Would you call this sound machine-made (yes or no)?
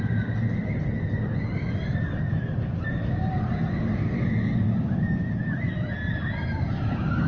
no